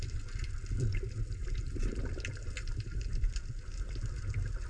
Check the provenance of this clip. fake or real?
real